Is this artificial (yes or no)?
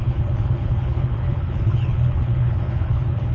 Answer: yes